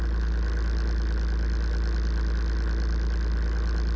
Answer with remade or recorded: recorded